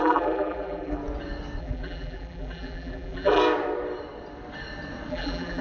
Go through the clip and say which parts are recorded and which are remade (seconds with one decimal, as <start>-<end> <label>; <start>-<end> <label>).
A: 0.0-1.0 remade; 1.0-1.6 recorded; 1.6-3.4 remade; 3.4-5.1 recorded; 5.1-5.6 remade